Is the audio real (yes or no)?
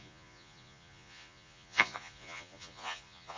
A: no